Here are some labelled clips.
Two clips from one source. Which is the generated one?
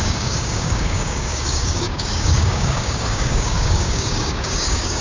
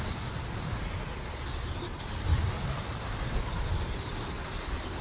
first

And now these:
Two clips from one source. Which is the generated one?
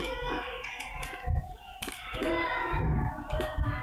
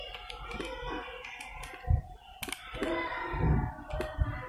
first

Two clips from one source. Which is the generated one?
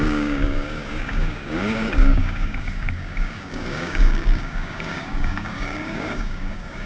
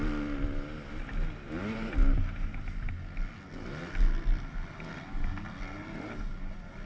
first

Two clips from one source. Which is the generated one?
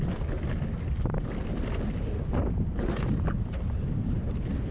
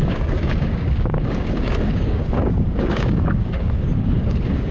second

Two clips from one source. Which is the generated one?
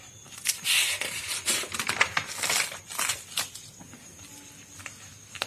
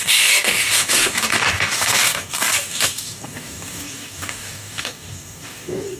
second